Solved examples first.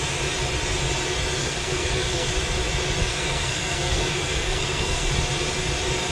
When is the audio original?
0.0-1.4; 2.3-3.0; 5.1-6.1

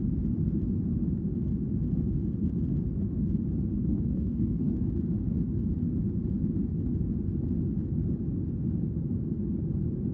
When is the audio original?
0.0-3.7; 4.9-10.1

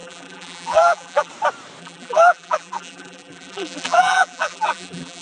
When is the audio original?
1.3-1.8